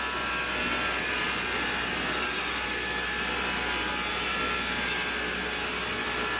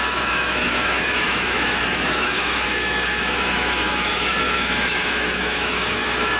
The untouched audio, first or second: first